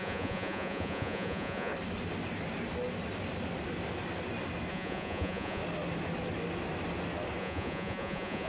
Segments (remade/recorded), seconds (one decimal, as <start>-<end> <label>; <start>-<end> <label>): 0.0-1.7 remade; 1.7-4.7 recorded; 4.7-5.6 remade; 5.6-7.4 recorded; 7.4-8.5 remade